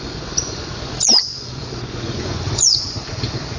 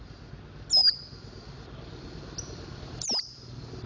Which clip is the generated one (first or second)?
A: first